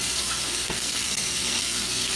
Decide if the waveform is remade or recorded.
remade